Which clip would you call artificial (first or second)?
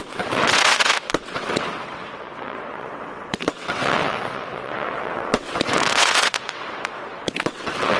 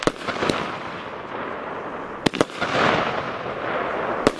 first